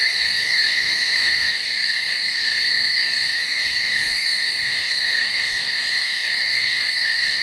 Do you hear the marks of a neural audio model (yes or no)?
yes